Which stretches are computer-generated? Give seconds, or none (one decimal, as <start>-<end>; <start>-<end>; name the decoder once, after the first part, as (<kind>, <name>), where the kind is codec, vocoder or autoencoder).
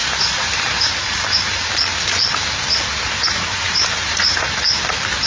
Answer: 0.0-1.7 (vocoder, BigVGAN v2); 2.9-4.6